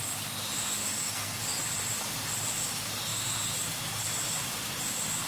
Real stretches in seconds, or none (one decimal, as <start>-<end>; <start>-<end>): 0.0-0.9; 1.4-5.3